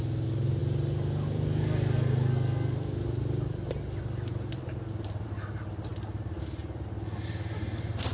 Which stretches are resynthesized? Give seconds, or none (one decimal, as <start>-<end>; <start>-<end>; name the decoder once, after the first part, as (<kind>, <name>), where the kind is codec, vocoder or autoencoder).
none